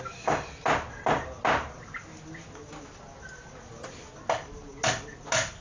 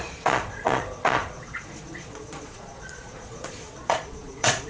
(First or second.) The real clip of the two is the first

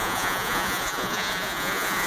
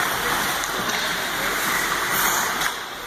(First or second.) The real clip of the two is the second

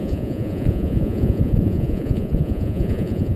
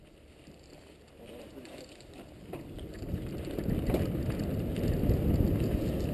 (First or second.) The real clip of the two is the second